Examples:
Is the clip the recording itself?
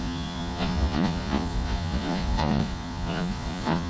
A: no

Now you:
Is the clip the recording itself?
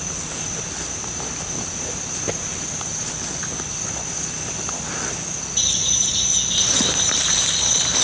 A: yes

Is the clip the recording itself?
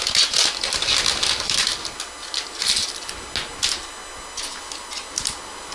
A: yes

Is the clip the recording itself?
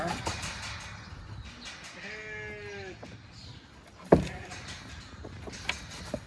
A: yes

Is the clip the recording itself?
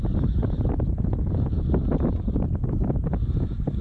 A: yes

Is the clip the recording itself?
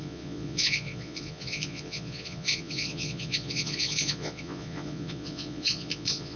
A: no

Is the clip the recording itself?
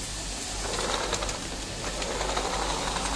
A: yes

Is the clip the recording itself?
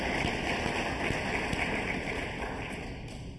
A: yes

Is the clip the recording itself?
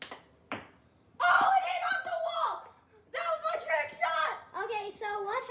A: yes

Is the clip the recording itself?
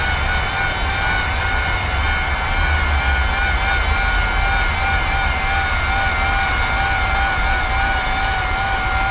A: yes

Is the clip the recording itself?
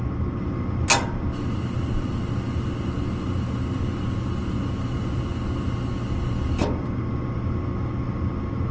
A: yes